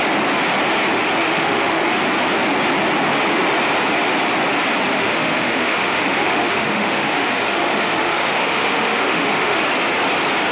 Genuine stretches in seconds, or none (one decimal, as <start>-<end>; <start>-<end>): 0.0-1.2; 2.0-4.9; 9.6-10.5